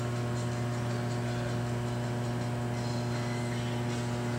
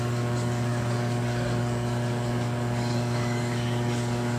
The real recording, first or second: first